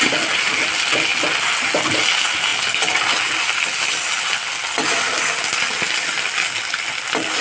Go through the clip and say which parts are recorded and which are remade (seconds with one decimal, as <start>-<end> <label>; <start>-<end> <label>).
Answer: 0.0-7.4 recorded